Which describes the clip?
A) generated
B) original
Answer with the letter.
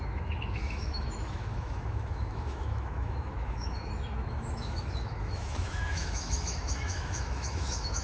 A